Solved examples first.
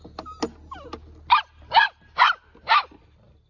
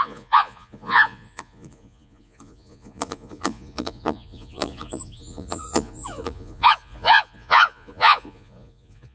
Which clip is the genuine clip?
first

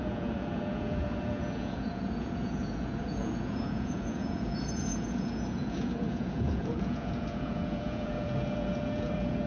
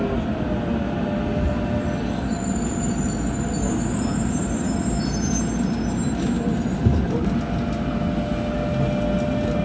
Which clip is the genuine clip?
second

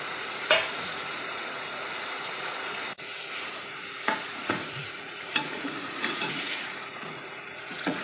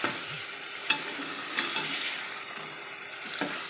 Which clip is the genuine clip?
second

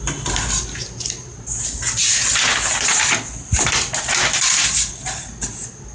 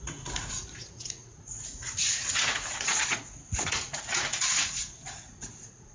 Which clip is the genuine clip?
first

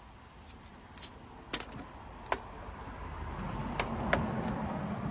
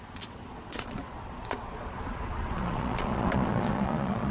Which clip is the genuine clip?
first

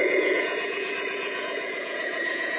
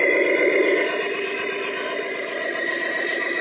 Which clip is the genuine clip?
second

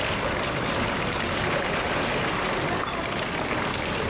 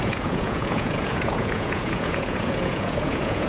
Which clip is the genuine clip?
first